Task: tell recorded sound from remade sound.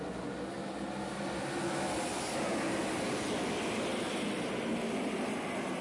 recorded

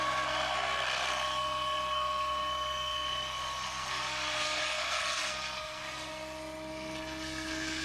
remade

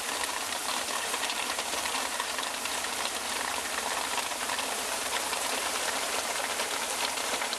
remade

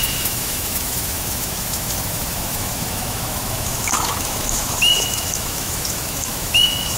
remade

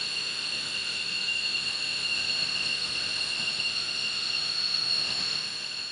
remade